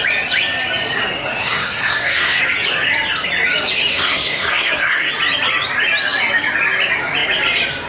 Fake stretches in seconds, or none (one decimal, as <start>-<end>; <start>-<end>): 1.4-2.4; 3.9-5.1